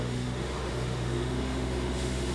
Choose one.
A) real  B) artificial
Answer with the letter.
B